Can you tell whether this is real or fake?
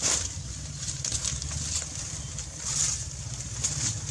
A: fake